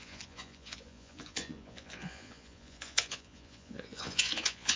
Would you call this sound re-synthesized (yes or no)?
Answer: yes